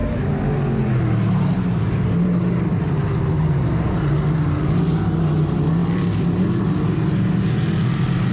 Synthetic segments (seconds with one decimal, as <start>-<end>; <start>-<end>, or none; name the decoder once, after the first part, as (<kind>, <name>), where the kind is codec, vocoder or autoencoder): none